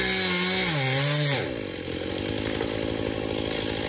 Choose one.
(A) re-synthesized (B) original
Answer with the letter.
B